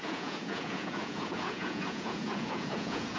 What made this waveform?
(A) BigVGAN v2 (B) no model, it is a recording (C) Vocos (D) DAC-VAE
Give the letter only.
C